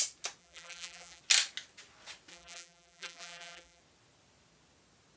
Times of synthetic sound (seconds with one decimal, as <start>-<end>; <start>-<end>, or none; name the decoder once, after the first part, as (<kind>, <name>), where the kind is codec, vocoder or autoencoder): 0.4-1.2 (vocoder, BigVGAN v2); 2.3-3.8